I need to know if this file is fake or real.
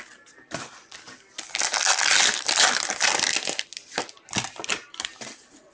real